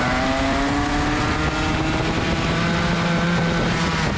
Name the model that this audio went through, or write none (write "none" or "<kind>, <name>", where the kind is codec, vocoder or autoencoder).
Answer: none